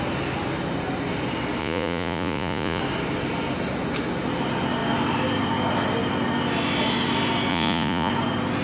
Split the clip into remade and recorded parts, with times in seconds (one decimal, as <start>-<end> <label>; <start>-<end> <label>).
0.0-1.6 recorded; 1.6-2.8 remade; 2.8-7.5 recorded; 7.5-8.1 remade; 8.1-8.6 recorded